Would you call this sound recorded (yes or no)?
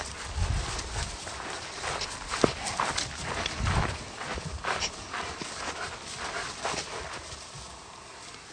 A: yes